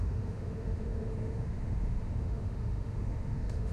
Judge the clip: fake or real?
fake